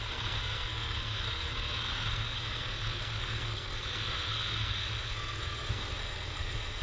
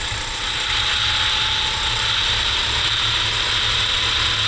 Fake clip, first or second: first